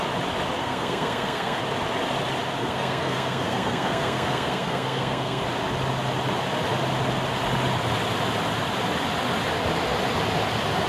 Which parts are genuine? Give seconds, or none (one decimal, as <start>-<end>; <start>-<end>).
0.0-0.6; 1.6-2.6; 5.4-10.9